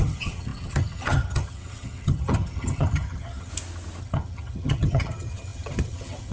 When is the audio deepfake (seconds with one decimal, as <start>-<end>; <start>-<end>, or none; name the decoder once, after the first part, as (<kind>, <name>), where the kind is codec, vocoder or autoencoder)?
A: 0.0-3.5 (vocoder, HiFi-GAN); 4.0-6.3